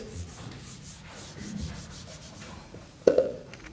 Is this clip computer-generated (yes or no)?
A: yes